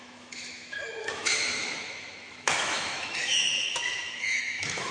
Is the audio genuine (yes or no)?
no